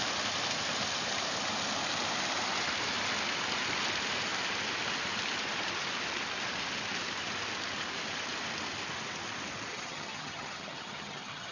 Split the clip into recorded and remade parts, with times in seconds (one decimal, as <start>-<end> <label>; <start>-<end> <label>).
0.0-9.7 recorded; 9.7-11.5 remade